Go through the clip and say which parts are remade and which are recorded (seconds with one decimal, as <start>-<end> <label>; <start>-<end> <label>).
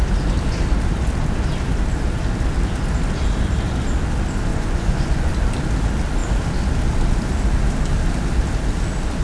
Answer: 0.0-4.5 recorded; 4.5-5.3 remade; 5.3-9.2 recorded